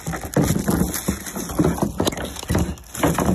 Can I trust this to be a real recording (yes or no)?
yes